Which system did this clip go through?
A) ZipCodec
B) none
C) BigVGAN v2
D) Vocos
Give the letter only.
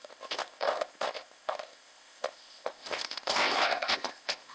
A